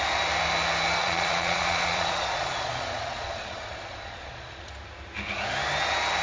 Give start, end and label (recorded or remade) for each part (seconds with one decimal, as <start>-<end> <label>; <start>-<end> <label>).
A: 0.0-1.0 recorded; 1.0-4.7 remade; 4.7-6.2 recorded